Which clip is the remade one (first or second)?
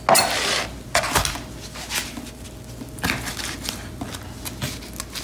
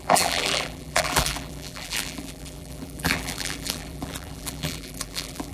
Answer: second